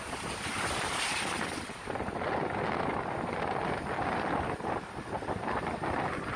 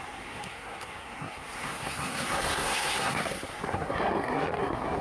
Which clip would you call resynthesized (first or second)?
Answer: second